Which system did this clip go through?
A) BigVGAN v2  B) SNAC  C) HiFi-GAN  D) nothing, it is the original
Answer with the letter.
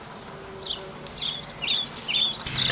D